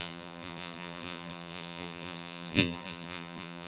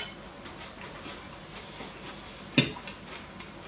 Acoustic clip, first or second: second